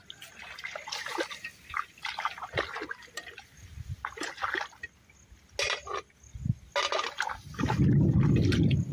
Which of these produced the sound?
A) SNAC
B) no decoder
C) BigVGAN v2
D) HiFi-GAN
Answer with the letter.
B